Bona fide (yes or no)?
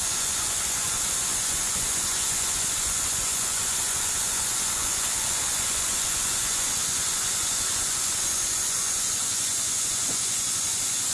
no